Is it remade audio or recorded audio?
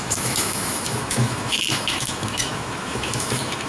remade